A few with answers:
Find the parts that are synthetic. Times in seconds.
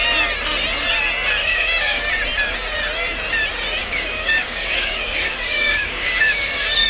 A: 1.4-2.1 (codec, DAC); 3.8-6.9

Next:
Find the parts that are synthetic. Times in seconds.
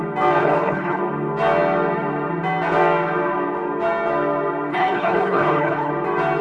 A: 0.4-1.0 (codec, HILCodec); 4.7-5.9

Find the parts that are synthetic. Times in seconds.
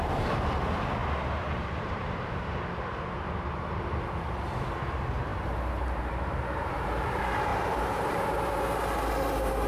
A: 0.0-1.0 (vocoder, BigVGAN v2); 1.8-7.5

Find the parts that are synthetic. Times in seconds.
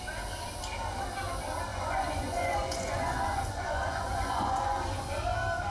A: 1.7-5.1 (vocoder, Vocos)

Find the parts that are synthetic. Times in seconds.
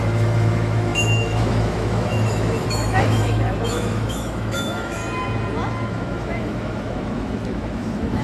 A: 0.0-5.0 (autoencoder, DAC-VAE); 5.9-8.2